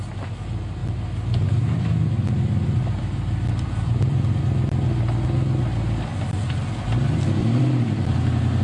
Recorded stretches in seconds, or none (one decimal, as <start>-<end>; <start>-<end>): 0.0-0.8; 4.4-6.1